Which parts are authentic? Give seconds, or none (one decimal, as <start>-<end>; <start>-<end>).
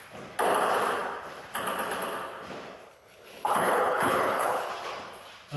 0.0-2.9; 4.7-5.6